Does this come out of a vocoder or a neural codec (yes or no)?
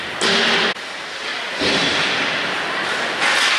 no